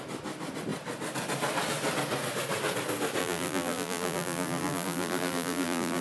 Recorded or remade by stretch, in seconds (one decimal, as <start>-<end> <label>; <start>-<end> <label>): 0.0-3.2 recorded; 3.2-6.0 remade